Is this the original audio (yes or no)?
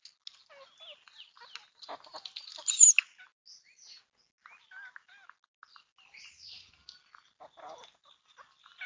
yes